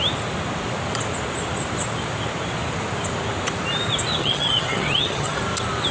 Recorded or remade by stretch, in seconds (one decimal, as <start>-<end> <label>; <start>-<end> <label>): 0.0-4.2 recorded; 4.2-5.4 remade; 5.4-5.9 recorded